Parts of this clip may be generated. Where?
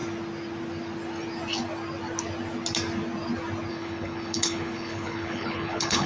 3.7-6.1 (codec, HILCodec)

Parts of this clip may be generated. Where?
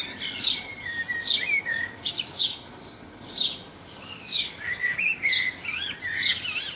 1.7-2.4 (codec, DAC); 3.7-5.3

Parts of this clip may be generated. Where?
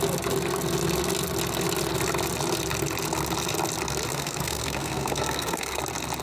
4.1-5.8 (codec, SNAC)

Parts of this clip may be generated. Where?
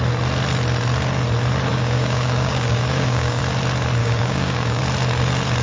1.7-3.4 (codec, DAC); 4.0-4.8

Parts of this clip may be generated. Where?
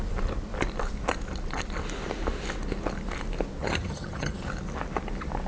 3.6-4.5 (vocoder, HiFi-GAN)